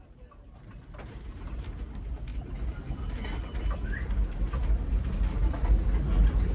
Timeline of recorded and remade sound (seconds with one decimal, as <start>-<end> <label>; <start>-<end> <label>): 0.0-6.5 recorded